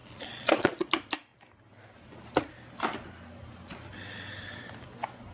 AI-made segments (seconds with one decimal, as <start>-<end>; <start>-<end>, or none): 0.0-0.9